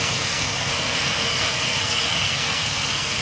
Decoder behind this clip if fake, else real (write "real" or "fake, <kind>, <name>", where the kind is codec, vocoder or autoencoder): fake, codec, SNAC